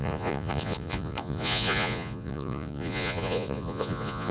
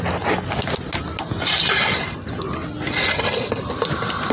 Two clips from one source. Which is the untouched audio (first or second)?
second